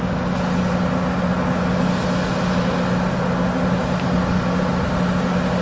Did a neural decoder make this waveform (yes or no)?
no